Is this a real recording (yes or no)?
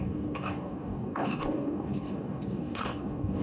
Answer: no